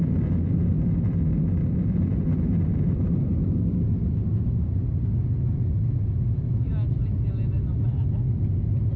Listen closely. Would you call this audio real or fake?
real